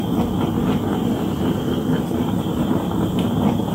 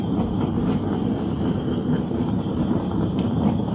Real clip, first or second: first